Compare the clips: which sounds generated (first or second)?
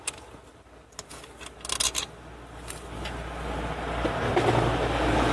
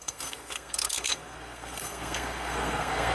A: second